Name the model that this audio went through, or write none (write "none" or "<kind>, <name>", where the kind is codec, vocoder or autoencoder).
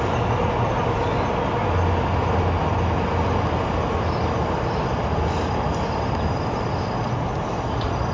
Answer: none